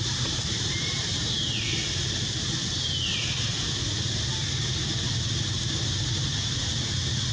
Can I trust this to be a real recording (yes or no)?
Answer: yes